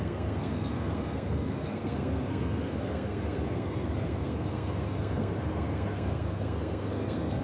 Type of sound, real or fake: fake